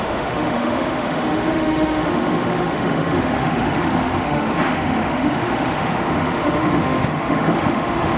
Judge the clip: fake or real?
fake